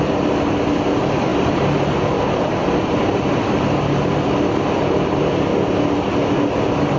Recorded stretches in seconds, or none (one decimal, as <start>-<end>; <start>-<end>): 0.0-7.0

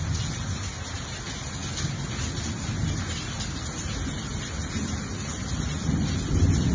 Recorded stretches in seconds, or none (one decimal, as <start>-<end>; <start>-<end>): 0.0-6.7

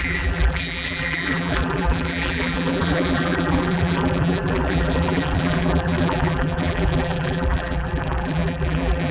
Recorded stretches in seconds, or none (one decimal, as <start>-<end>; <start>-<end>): none

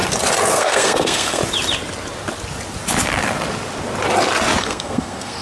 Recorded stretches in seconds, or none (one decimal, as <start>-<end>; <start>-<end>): 0.0-0.5; 1.4-4.6

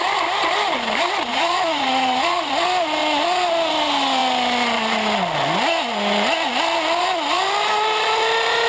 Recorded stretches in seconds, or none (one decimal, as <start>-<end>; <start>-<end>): 0.0-1.3; 2.5-8.7